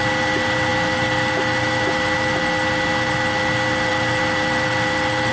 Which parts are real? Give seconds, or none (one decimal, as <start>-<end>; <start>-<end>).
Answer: 0.0-0.7; 2.4-3.9